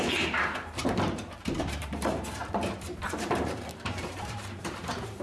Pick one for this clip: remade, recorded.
remade